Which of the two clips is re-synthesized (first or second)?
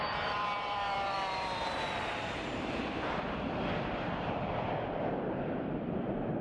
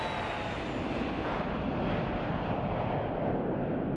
first